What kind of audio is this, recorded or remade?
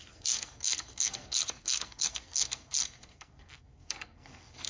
remade